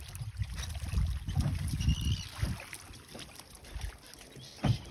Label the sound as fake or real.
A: real